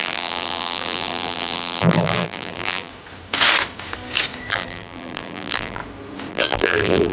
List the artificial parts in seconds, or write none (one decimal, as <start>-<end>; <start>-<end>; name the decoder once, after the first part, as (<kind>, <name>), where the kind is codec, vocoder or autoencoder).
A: 0.0-2.9 (vocoder, BigVGAN v2); 4.5-5.8; 6.3-7.1